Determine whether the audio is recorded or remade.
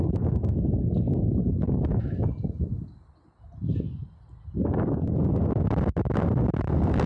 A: recorded